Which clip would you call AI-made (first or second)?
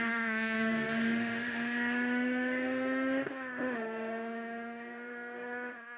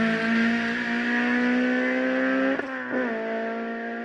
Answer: first